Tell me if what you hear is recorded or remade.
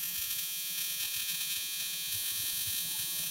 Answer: remade